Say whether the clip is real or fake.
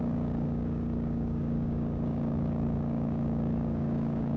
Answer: fake